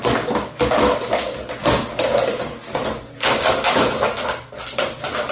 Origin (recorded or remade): recorded